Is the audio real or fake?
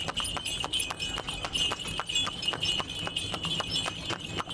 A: real